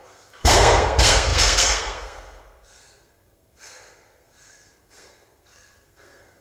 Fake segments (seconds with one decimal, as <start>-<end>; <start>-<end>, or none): 0.0-6.4